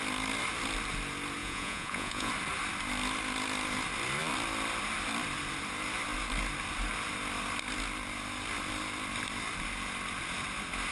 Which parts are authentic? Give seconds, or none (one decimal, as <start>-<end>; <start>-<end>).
0.0-1.4; 2.3-10.9